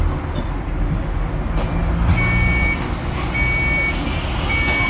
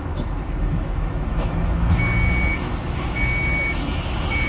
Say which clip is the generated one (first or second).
second